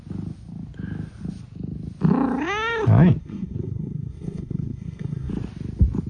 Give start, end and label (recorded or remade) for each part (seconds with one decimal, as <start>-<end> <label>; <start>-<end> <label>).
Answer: 0.0-3.2 recorded; 3.2-5.3 remade; 5.3-6.1 recorded